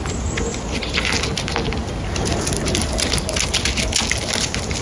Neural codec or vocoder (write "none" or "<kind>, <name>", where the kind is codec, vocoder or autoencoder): none